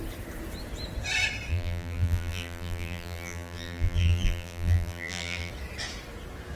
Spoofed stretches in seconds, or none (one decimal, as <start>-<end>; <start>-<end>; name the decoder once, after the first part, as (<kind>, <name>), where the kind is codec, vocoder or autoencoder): 1.5-5.5 (vocoder, BigVGAN v2)